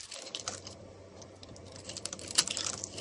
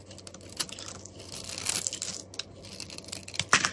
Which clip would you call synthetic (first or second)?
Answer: first